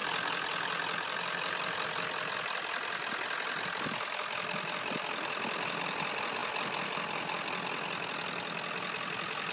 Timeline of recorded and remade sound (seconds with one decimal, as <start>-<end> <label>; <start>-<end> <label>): 0.0-9.5 recorded